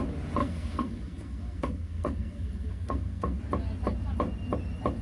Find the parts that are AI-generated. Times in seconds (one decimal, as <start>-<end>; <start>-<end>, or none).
0.4-3.4